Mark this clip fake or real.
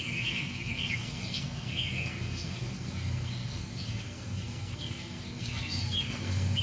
fake